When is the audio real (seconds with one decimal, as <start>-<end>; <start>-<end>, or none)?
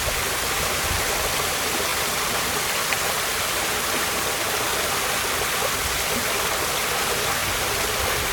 0.0-8.3